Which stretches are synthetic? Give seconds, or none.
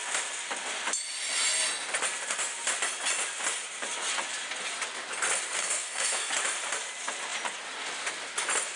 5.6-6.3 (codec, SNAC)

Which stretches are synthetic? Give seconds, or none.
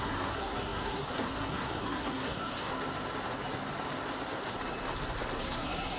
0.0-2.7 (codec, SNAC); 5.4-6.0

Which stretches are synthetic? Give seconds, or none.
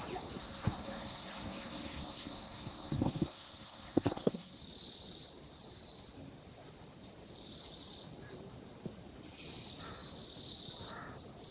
0.4-4.6 (codec, SNAC)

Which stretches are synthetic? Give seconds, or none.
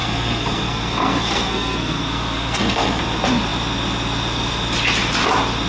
0.0-3.0 (codec, SNAC)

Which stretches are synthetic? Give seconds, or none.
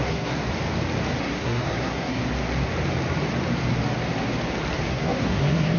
0.0-0.4 (codec, SNAC); 1.2-2.2; 4.9-5.8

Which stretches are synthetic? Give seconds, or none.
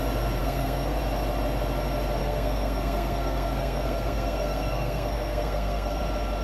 0.4-1.0 (codec, SNAC); 2.2-6.0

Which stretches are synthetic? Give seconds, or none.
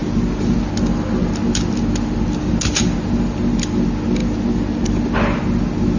none